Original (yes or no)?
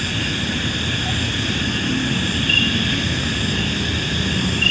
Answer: yes